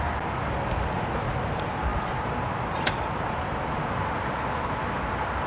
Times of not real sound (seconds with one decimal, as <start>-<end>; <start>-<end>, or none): none